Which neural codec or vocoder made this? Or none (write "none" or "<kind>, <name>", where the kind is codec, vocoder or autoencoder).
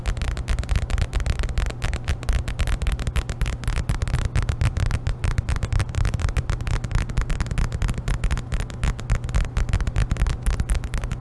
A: none